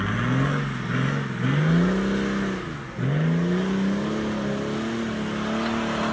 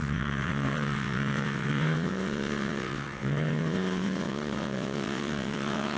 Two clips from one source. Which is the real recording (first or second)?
first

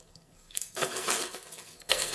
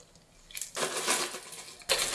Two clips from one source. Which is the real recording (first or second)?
second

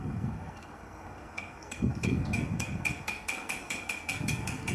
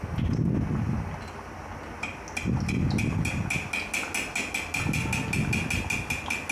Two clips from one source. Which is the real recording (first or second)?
second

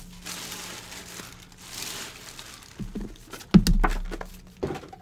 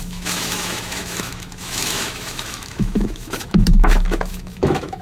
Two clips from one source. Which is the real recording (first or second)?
first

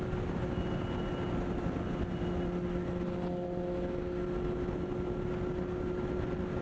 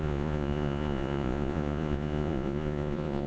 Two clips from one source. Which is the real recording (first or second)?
first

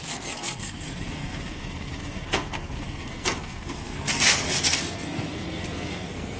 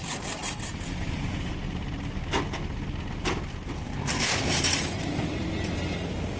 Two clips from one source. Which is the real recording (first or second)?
second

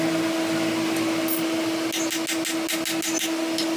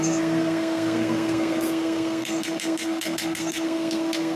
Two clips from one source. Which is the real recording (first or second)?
first